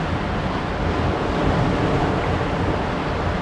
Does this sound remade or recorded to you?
recorded